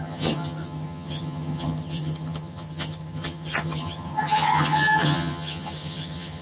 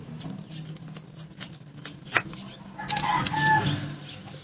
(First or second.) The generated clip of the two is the first